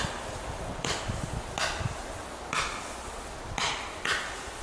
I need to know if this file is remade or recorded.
recorded